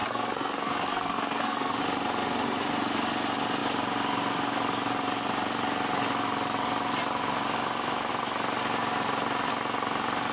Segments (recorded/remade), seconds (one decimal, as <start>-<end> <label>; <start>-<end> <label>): 0.0-1.8 remade; 1.8-10.3 recorded